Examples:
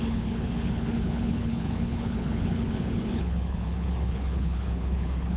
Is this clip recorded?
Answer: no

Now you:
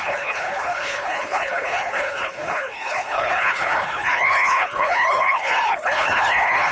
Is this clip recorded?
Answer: no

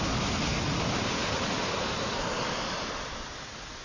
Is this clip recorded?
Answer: yes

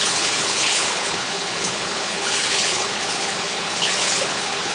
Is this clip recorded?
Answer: no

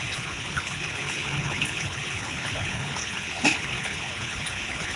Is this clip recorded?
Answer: no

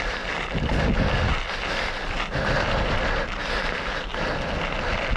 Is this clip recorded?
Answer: yes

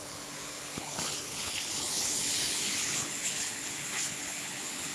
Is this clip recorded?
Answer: no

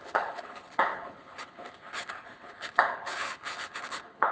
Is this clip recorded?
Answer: no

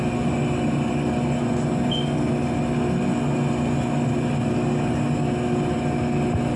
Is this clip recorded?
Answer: yes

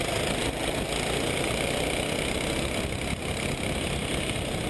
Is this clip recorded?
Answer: yes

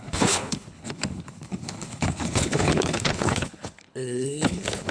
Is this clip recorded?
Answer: no